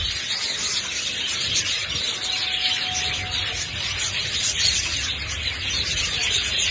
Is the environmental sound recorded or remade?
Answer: recorded